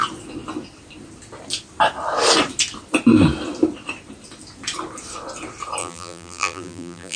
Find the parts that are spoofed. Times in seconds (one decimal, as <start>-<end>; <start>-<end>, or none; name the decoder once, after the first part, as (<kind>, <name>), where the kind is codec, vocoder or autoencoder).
5.8-7.2 (vocoder, BigVGAN v2)